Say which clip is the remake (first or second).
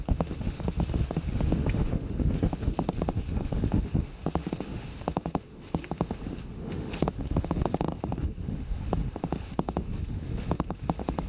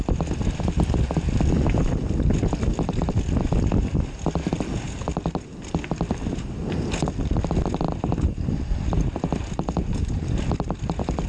first